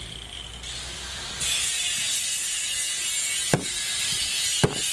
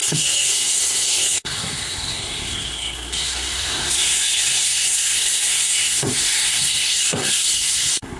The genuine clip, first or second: first